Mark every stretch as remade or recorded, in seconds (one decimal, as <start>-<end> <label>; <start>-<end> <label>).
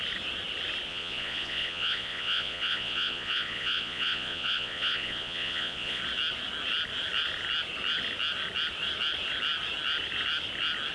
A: 0.0-0.9 recorded; 0.9-6.0 remade; 6.0-10.9 recorded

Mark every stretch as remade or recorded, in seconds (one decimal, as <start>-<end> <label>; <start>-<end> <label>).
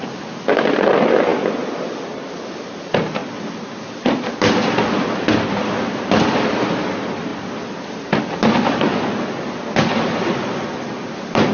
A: 0.0-1.3 recorded; 1.3-2.0 remade; 2.0-3.2 recorded; 3.2-3.7 remade; 3.7-11.5 recorded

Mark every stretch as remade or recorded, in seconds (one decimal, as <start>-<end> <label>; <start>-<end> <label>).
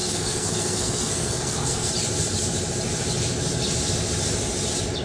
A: 0.0-1.9 remade; 1.9-5.0 recorded